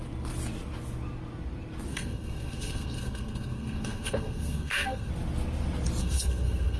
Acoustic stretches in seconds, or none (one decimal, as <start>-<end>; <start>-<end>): 0.0-1.9; 5.1-6.0